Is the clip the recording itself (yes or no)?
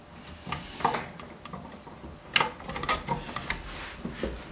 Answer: yes